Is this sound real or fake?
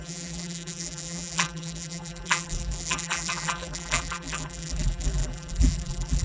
fake